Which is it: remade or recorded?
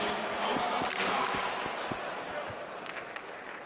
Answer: recorded